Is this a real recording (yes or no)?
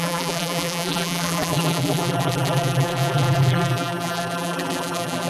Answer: no